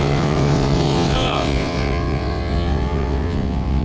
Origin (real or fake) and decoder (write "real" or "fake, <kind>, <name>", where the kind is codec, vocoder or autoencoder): fake, vocoder, WaveNeXt